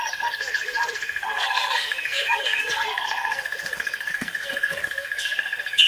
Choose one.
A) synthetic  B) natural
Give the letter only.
A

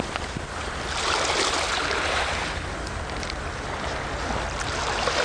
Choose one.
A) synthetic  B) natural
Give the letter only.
B